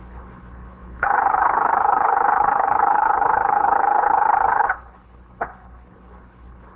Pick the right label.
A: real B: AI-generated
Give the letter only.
B